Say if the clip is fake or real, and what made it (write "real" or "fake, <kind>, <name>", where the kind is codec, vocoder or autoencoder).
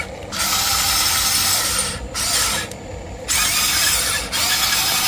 real